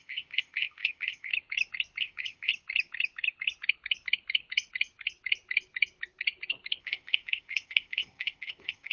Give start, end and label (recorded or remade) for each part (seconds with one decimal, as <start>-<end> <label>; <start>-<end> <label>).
0.0-1.3 remade; 1.3-2.0 recorded; 2.0-2.5 remade; 2.5-6.8 recorded; 6.8-8.9 remade